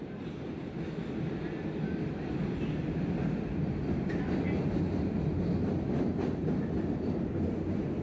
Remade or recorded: recorded